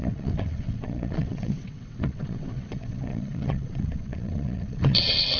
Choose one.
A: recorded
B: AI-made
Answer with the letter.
B